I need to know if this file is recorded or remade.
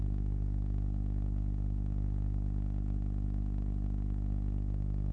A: recorded